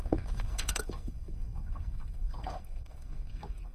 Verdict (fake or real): fake